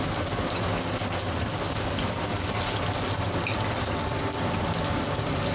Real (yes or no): yes